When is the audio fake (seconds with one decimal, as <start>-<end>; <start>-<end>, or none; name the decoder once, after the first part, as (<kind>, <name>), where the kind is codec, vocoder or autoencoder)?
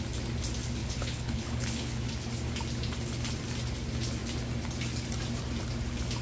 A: 0.8-2.1 (codec, HILCodec)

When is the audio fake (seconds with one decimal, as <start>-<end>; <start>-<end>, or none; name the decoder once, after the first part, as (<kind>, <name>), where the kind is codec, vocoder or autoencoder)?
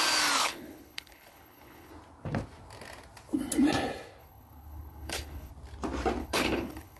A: 0.4-1.9 (codec, HILCodec); 4.2-5.5; 6.2-7.0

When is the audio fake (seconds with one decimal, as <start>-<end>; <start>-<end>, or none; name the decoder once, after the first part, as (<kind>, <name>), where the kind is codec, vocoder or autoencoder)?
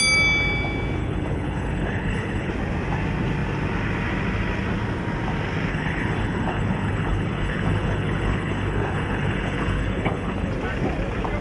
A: 1.0-2.5 (codec, HILCodec); 5.7-10.5